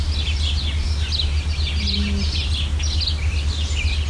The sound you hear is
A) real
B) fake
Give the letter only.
A